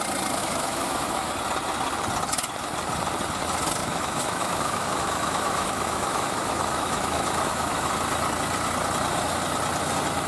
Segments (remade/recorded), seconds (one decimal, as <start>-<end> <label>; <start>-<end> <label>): 0.0-0.4 recorded; 0.4-1.3 remade; 1.3-3.8 recorded; 3.8-7.9 remade; 7.9-10.3 recorded